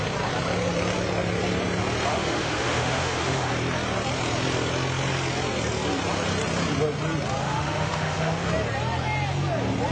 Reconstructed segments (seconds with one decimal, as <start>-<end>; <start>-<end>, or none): 2.1-3.5; 7.4-8.5